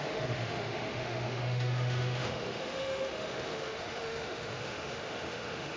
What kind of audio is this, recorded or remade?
remade